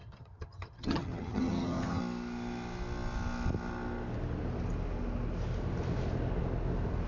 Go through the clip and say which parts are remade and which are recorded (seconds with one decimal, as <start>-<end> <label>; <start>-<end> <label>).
0.0-2.0 remade; 2.0-7.1 recorded